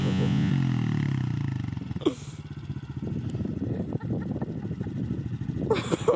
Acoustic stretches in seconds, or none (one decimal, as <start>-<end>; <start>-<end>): 0.5-6.2